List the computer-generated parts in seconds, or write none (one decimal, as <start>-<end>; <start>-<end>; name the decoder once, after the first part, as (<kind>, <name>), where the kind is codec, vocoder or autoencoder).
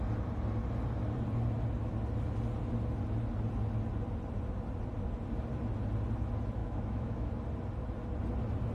6.6-7.3 (autoencoder, DAC-VAE)